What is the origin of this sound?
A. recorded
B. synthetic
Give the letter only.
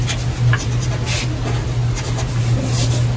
A